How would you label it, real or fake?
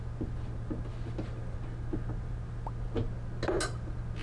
real